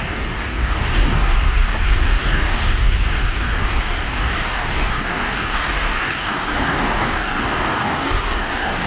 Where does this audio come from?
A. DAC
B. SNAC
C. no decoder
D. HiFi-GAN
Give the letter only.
A